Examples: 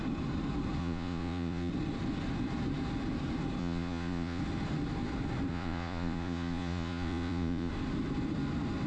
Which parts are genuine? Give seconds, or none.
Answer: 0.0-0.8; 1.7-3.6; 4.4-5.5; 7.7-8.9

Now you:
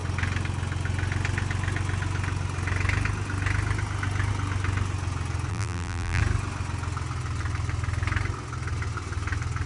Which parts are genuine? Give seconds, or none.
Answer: 0.0-5.5; 6.2-9.7

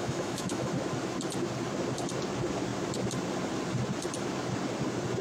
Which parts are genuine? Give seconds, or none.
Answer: 0.7-5.2

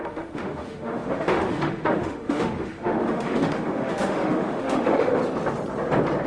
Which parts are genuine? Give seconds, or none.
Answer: 5.2-6.3

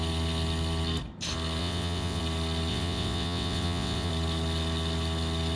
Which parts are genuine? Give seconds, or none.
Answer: 0.0-1.6; 2.2-2.7; 4.1-5.6

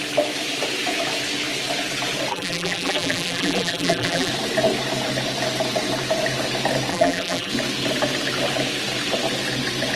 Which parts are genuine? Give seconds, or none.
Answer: 0.0-2.3; 4.3-6.9; 7.5-10.0

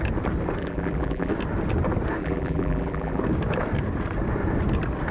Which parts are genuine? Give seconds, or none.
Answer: 0.0-0.6; 1.3-2.2; 3.2-5.1

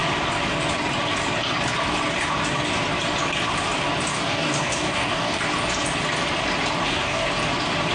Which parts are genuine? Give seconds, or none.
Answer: 0.0-4.1; 5.4-6.8; 7.3-7.9